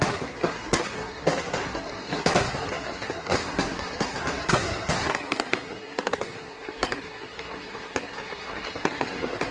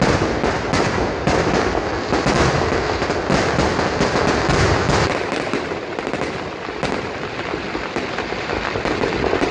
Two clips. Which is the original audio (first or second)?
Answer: second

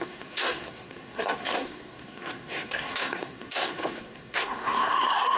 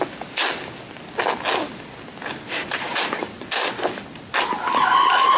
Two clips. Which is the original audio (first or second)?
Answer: second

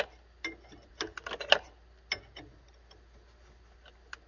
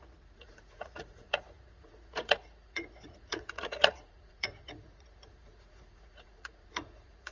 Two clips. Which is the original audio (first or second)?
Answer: first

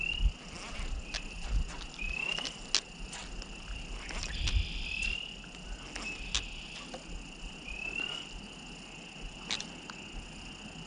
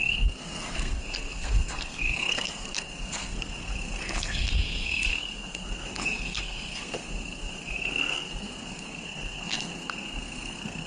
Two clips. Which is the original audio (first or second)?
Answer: first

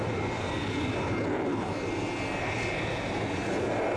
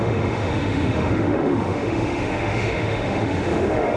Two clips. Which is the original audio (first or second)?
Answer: first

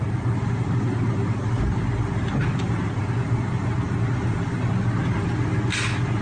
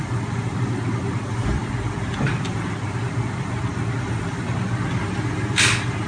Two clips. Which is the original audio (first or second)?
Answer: first